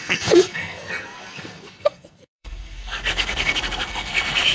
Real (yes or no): no